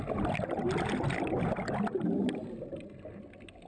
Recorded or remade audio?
recorded